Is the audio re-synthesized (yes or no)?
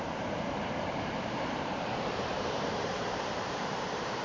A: yes